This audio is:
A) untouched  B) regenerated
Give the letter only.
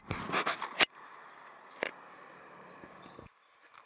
A